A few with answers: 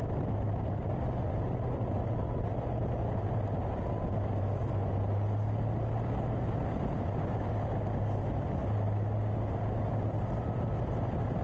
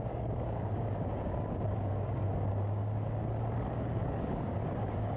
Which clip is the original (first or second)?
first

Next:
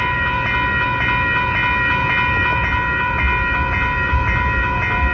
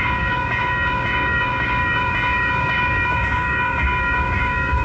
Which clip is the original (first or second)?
first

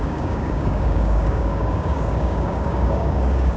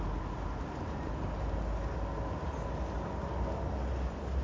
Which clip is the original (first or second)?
second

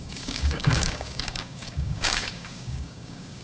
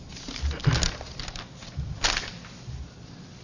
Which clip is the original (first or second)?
second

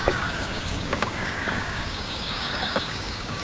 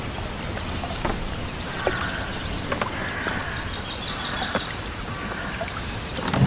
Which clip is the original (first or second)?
second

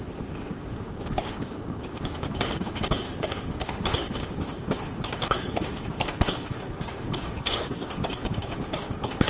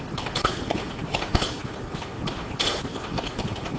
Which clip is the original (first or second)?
second